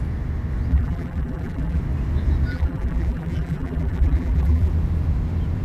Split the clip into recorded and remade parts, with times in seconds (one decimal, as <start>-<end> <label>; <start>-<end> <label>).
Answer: 0.0-0.7 recorded; 0.7-1.8 remade; 1.8-2.5 recorded; 2.5-4.7 remade; 4.7-5.6 recorded